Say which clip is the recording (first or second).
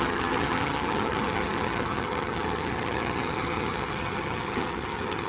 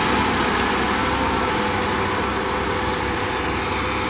second